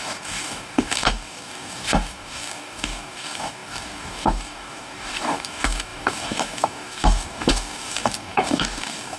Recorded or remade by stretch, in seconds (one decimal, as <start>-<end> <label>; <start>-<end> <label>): 0.0-9.2 remade